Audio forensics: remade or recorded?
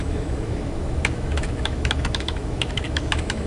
remade